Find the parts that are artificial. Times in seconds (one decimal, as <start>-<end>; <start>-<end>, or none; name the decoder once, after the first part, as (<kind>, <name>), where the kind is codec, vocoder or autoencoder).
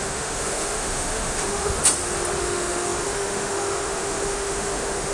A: 0.0-1.8 (autoencoder, DAC-VAE); 2.4-5.1